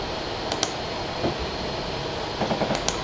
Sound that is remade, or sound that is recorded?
recorded